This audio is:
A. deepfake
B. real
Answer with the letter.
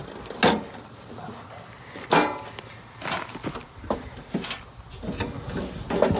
B